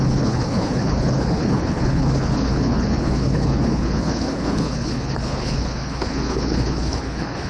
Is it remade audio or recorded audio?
remade